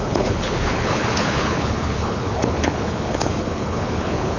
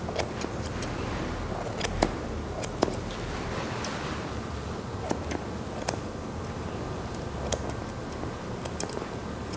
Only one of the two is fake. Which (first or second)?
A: first